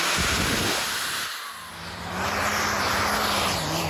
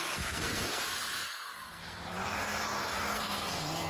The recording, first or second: first